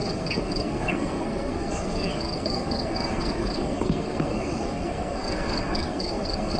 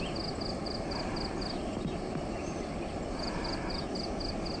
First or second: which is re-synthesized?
first